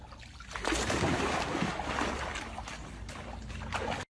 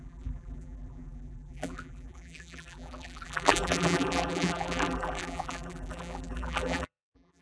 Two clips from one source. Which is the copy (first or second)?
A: second